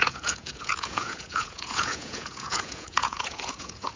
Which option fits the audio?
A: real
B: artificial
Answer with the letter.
B